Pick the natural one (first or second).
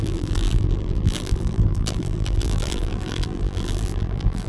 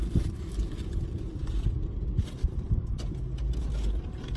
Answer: second